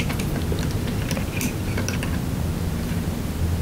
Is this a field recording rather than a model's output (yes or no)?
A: yes